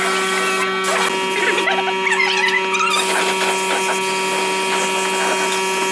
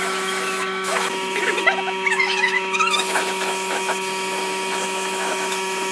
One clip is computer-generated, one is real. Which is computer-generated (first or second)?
second